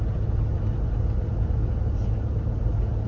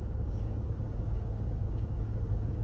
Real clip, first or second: first